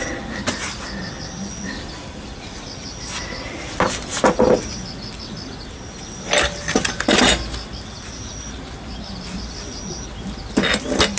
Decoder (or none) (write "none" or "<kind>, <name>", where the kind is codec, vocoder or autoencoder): none